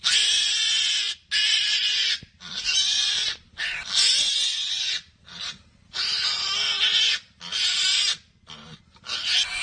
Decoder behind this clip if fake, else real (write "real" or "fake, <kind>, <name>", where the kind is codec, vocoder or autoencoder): real